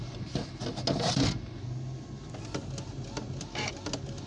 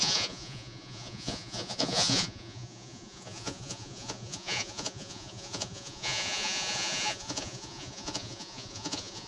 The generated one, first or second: second